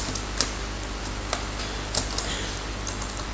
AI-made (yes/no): no